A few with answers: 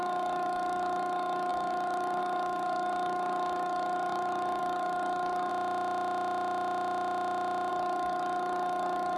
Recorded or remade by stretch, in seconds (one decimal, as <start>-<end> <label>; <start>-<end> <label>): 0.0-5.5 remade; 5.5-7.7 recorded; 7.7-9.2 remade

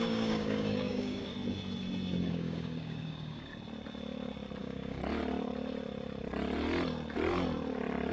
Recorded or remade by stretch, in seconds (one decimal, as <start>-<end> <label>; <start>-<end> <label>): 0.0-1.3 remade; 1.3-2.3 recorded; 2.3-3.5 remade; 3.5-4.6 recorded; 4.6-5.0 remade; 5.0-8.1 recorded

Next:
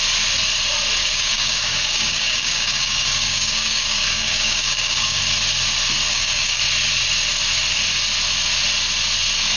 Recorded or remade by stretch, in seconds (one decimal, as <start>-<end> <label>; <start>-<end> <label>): 0.0-1.0 recorded; 1.0-5.2 remade; 5.2-6.1 recorded; 6.1-6.6 remade; 6.6-9.6 recorded